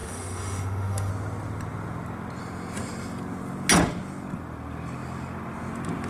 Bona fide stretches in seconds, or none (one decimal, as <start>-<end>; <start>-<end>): 1.1-6.1